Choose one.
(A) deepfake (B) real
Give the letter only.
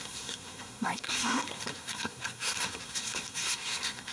A